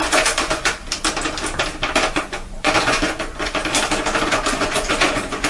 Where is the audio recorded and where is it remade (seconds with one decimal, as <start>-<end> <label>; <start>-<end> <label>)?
0.0-0.8 remade; 0.8-2.1 recorded; 2.1-3.6 remade; 3.6-4.2 recorded; 4.2-5.5 remade